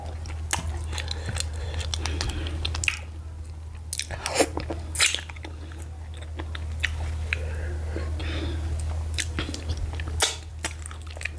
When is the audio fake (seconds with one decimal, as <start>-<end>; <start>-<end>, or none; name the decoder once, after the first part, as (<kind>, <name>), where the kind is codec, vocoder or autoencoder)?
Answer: none